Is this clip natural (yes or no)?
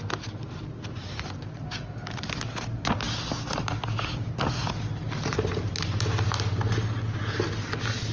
yes